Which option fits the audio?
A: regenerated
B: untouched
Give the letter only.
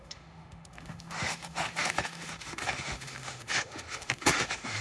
A